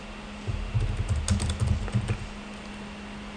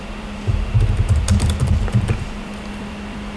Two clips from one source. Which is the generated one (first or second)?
second